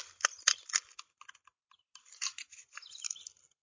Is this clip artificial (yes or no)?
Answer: no